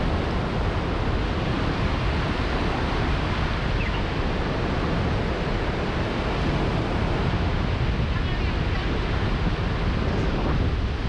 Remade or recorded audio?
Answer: recorded